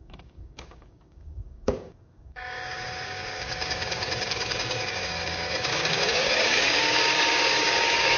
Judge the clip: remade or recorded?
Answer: remade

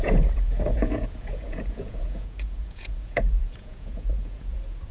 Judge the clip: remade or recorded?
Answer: remade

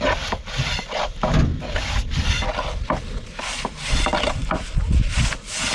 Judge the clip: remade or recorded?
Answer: recorded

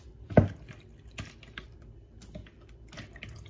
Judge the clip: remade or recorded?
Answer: recorded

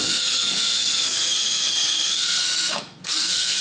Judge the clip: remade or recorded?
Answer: remade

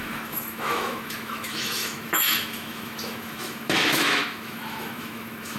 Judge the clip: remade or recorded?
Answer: remade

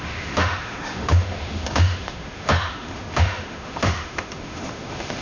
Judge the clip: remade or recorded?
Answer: remade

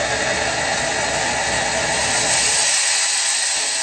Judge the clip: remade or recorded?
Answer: recorded